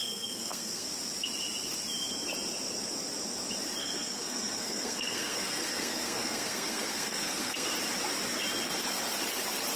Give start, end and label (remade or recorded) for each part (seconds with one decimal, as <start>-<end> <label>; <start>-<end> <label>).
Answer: 0.0-0.9 remade; 0.9-3.8 recorded; 3.8-7.7 remade; 7.7-9.8 recorded